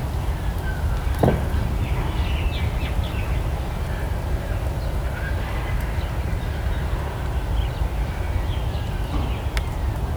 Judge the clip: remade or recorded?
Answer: recorded